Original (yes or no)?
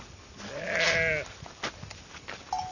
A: yes